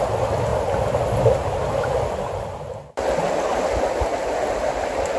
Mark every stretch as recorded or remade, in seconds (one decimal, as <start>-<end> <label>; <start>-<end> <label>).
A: 0.0-5.2 recorded